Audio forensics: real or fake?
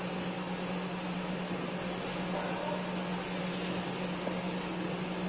real